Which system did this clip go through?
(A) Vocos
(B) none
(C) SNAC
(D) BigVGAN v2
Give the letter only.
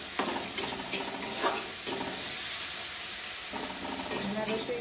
B